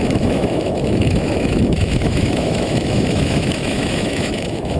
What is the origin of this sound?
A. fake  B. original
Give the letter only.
A